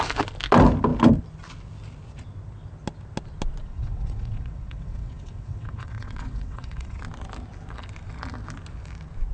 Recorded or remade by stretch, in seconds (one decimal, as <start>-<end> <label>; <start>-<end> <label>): 0.0-3.6 recorded; 3.6-7.0 remade; 7.0-9.3 recorded